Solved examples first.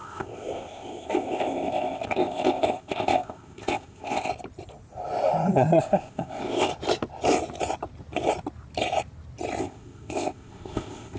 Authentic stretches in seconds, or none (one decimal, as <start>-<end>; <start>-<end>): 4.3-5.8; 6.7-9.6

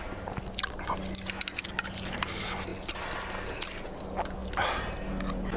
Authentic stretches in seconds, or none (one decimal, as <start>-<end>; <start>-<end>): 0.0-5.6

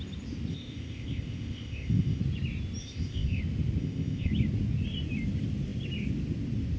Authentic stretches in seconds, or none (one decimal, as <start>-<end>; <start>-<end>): 0.0-0.5; 2.2-2.8; 3.4-3.8; 4.3-6.8